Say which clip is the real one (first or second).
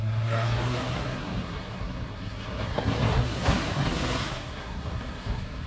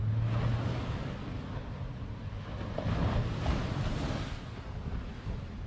second